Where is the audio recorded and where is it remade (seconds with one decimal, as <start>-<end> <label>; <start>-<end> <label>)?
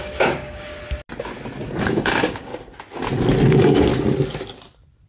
0.0-0.7 remade; 0.7-1.8 recorded; 1.8-2.5 remade; 2.5-3.5 recorded; 3.5-3.9 remade; 3.9-5.1 recorded